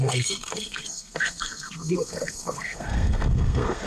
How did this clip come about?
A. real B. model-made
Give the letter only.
B